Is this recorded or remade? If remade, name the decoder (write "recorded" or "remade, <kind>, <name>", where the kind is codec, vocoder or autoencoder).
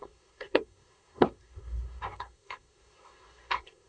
remade, codec, SNAC